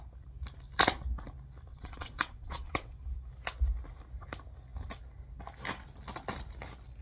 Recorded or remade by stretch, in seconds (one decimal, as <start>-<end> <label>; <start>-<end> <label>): 0.0-1.7 recorded; 1.7-3.1 remade; 3.1-7.0 recorded